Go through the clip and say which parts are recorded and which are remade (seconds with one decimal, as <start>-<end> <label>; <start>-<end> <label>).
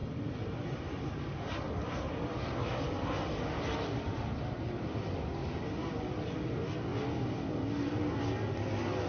0.0-1.4 remade; 1.4-5.4 recorded; 5.4-6.0 remade; 6.0-9.1 recorded